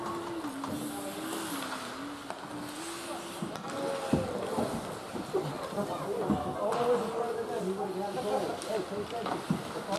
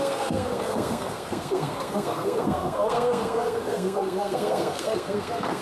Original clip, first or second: first